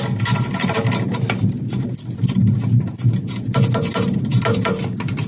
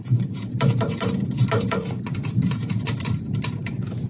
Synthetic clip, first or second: second